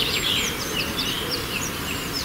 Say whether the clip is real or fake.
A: fake